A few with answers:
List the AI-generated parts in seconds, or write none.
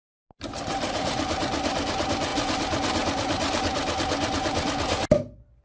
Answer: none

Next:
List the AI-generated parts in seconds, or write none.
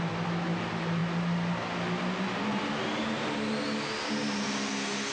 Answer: none